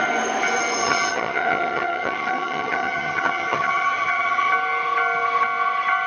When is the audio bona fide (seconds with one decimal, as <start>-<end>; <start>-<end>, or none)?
0.0-0.8; 4.5-6.1